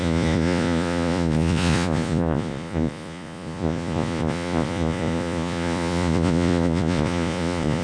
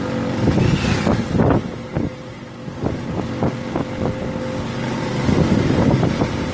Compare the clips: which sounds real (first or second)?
second